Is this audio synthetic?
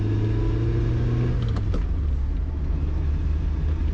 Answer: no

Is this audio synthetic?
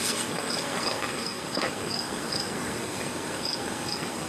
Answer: yes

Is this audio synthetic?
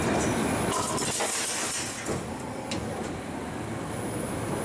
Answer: no